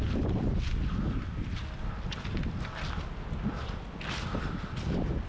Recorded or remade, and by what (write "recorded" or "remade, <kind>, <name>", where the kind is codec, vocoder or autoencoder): recorded